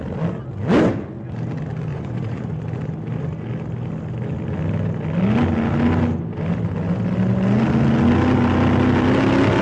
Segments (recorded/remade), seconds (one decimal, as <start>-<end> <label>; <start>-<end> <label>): 0.0-1.9 recorded; 1.9-2.5 remade; 2.5-9.6 recorded